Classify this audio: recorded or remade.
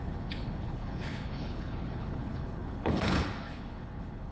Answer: remade